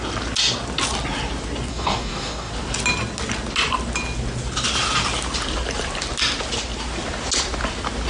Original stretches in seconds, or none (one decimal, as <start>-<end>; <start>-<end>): 0.0-1.7; 2.5-8.1

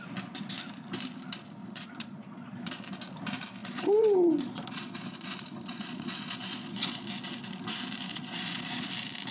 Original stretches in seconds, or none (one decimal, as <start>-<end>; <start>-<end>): 0.0-1.6; 2.7-3.6; 7.0-8.1; 8.9-9.3

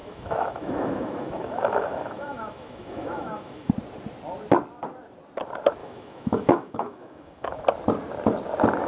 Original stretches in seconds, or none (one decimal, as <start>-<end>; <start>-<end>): 3.7-5.8; 7.6-8.9

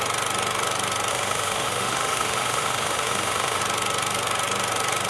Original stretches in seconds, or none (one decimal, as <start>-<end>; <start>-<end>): 0.0-1.1; 3.6-5.1

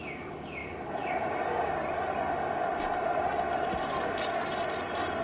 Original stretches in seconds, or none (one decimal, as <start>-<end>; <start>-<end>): 0.0-2.7; 3.3-5.2

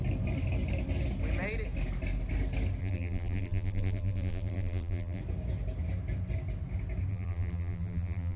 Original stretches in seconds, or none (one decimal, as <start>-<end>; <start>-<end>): 0.0-2.8; 5.2-7.1